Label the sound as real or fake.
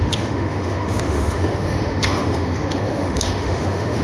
fake